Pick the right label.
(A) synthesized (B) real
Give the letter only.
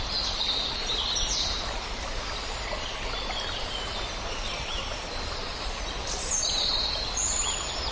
A